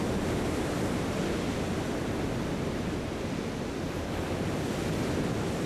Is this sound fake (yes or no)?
no